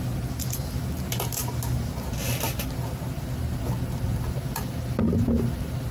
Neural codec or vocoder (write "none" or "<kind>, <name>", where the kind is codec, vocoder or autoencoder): none